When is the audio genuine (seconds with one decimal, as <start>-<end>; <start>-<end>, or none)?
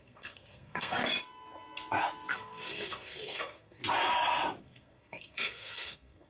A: 1.0-2.3; 3.8-4.6